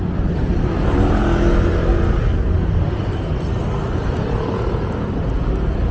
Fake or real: real